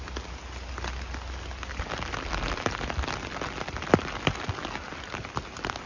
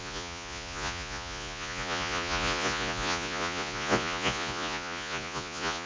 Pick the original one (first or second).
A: first